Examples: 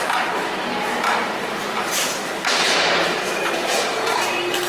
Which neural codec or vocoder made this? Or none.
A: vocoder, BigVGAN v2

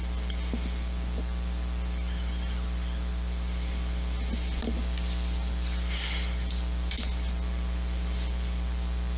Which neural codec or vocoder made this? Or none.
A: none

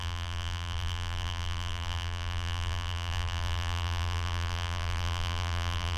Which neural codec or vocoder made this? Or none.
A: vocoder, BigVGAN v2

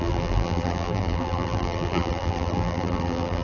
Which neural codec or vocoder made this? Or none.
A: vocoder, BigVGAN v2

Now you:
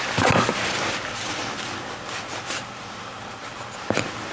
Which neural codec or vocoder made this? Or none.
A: none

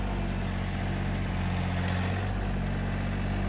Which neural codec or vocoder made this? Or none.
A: none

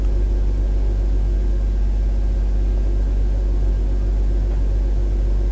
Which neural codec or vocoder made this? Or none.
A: none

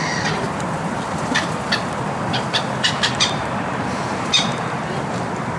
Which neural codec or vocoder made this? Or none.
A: vocoder, BigVGAN v2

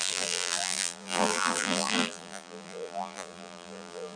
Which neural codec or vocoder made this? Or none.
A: vocoder, BigVGAN v2